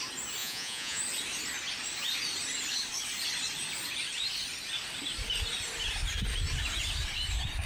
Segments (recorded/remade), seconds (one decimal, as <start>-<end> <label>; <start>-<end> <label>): 0.0-0.4 recorded; 0.4-1.0 remade; 1.0-7.7 recorded